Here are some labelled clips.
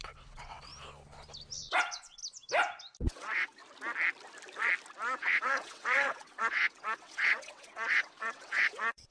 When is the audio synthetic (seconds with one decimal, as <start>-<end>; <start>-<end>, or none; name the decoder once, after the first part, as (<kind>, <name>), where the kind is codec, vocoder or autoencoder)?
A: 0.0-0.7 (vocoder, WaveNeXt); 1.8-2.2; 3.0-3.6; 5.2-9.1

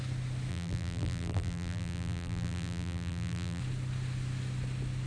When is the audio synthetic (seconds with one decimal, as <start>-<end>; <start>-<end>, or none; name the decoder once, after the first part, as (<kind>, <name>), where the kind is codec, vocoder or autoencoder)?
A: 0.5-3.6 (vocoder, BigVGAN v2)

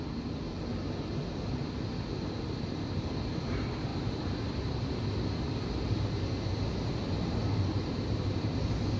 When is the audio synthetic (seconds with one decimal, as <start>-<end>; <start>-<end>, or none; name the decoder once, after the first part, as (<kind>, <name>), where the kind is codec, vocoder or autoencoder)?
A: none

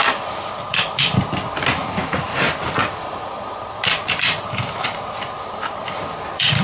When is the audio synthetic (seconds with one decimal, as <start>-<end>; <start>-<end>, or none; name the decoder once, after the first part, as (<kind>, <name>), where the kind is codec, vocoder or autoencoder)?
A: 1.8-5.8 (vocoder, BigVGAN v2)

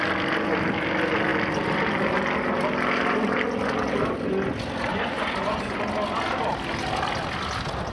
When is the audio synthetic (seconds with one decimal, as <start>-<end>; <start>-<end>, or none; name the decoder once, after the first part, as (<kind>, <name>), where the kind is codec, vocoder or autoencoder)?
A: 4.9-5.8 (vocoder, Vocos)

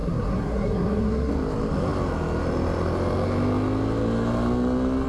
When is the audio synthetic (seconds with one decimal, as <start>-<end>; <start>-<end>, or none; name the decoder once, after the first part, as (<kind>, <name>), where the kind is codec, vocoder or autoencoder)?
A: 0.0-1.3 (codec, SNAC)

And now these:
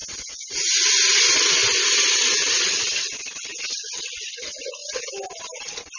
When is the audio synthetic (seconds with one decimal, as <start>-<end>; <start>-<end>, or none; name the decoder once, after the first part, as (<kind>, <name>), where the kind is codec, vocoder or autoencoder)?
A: 1.1-1.6 (vocoder, BigVGAN v2); 2.6-6.0

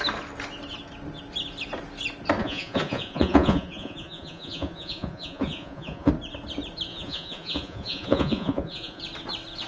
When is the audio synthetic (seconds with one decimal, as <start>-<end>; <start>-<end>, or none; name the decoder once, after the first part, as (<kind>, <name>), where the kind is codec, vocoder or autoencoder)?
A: 2.4-6.1 (vocoder, Vocos); 6.9-9.0